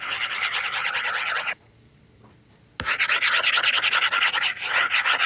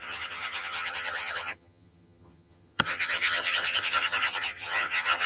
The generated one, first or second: second